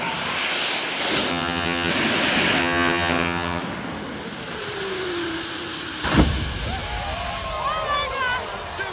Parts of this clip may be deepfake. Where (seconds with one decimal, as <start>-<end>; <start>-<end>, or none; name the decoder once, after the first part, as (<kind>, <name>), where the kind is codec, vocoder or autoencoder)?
1.3-1.9 (vocoder, HiFi-GAN); 2.6-3.6